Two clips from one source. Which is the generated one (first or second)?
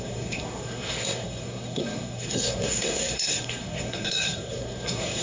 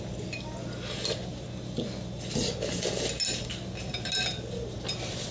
first